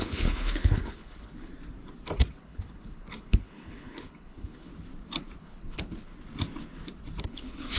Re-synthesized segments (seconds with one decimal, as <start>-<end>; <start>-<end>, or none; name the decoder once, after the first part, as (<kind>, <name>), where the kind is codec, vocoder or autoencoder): 0.0-1.5 (codec, HILCodec); 2.3-4.7; 5.4-6.1; 7.2-7.8